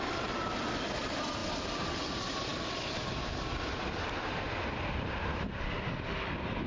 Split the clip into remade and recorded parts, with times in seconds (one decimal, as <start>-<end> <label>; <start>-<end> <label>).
0.0-1.4 remade; 1.4-2.0 recorded; 2.0-6.7 remade